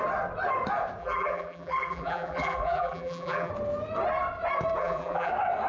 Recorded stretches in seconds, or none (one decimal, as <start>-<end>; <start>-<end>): 0.0-1.0; 3.5-4.8; 5.3-5.7